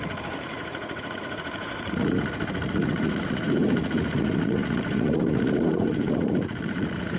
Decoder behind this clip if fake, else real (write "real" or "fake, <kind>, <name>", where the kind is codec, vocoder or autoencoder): fake, vocoder, Vocos